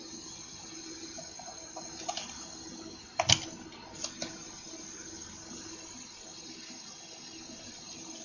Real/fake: real